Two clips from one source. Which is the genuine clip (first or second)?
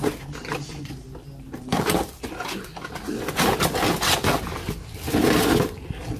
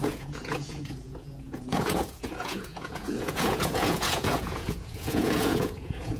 first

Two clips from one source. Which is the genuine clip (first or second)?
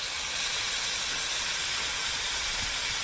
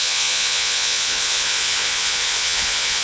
first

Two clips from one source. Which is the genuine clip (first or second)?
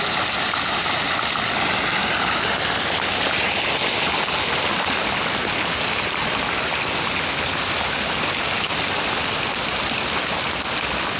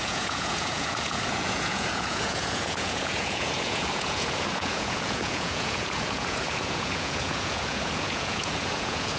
first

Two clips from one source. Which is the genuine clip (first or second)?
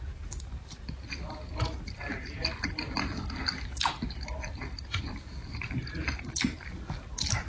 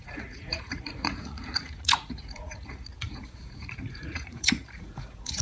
first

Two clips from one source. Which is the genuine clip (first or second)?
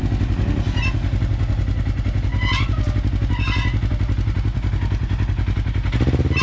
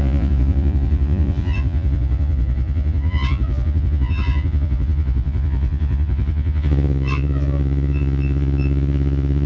first